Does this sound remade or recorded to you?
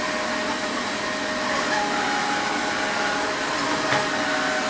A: recorded